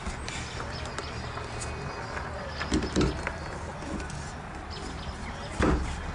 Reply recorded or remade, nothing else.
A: recorded